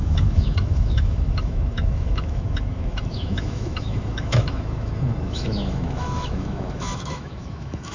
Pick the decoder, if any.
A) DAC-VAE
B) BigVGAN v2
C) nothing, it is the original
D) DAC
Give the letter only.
A